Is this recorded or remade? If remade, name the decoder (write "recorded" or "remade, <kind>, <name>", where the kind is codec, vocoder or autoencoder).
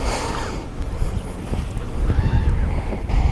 recorded